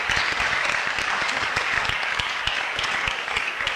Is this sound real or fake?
fake